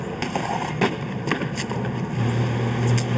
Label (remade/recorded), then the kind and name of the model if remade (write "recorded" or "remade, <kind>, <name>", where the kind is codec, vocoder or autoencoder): recorded